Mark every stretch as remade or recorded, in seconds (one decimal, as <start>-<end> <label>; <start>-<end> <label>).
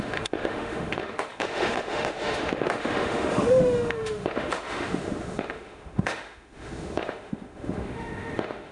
0.0-8.7 remade